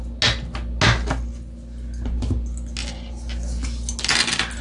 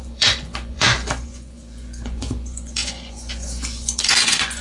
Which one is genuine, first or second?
first